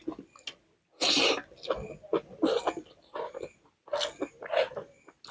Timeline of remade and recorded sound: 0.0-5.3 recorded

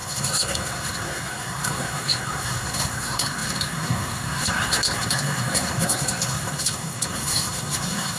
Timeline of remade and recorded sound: 0.0-8.2 remade